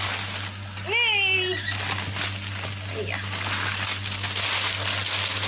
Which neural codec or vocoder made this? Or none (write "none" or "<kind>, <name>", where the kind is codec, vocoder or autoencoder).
none